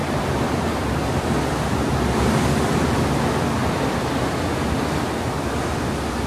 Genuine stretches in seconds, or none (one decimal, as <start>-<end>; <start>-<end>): 0.0-3.6; 5.1-6.3